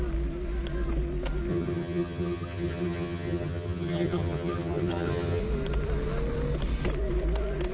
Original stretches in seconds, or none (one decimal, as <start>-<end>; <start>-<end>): 0.0-1.5; 5.4-7.7

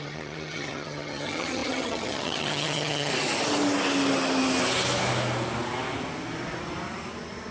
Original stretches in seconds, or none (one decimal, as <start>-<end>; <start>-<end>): 3.1-7.5

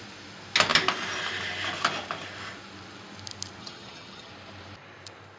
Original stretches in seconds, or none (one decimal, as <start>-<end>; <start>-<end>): 0.0-3.6; 4.3-5.4

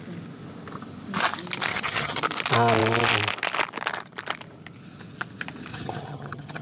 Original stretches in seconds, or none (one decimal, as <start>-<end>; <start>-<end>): 0.0-1.7; 2.2-5.7

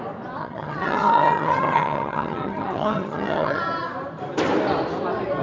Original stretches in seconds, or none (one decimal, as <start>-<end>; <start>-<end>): 0.0-0.4; 3.6-5.4